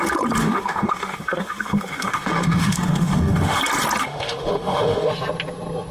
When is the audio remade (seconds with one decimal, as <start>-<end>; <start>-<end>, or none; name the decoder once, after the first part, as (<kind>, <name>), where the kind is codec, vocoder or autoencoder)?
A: 0.4-3.6 (autoencoder, DAC-VAE); 4.0-5.1